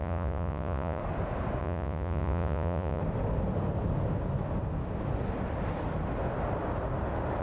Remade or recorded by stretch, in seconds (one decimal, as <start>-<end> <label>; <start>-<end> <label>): 0.0-1.0 remade; 1.0-1.6 recorded; 1.6-3.0 remade; 3.0-7.4 recorded